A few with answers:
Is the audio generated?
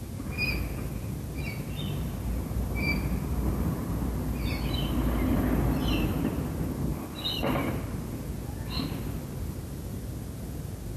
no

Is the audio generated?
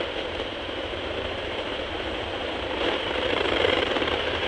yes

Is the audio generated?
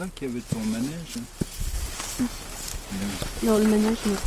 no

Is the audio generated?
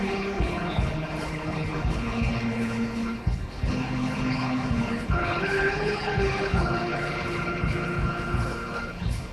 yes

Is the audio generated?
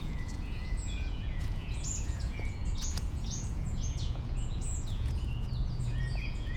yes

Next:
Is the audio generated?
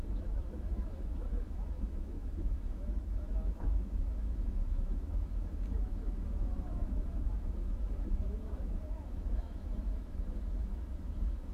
yes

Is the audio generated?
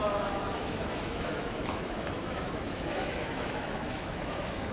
yes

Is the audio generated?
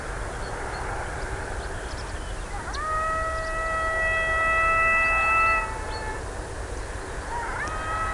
no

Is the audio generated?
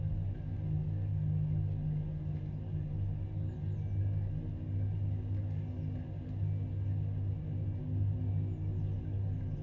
no